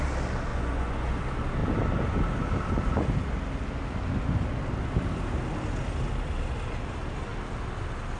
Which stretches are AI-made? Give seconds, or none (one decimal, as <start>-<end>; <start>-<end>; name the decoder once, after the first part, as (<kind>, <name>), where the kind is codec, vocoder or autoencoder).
0.5-1.2 (vocoder, Vocos)